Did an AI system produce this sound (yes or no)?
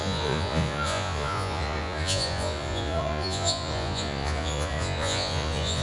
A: yes